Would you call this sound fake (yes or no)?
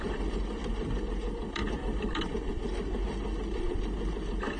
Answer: yes